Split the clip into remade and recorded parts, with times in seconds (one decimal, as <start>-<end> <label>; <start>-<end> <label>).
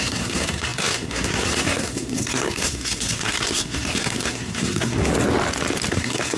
0.0-5.1 remade; 5.1-5.9 recorded; 5.9-6.4 remade